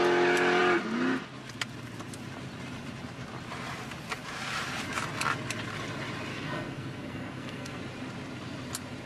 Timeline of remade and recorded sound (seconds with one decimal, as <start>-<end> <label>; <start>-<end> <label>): 0.0-6.3 recorded; 6.3-7.8 remade; 7.8-9.1 recorded